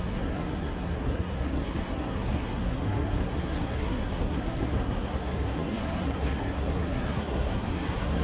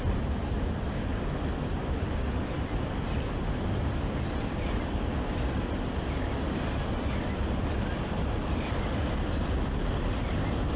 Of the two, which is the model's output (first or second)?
first